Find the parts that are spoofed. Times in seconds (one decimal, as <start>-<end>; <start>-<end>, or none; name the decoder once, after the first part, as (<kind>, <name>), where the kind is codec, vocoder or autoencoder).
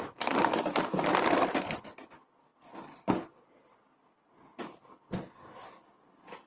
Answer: none